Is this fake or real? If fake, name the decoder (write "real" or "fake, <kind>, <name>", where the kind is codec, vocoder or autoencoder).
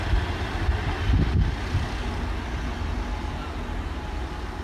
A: real